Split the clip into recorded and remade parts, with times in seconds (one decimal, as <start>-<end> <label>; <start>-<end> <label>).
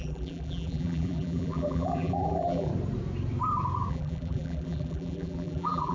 0.0-2.7 remade; 2.7-3.9 recorded; 3.9-5.9 remade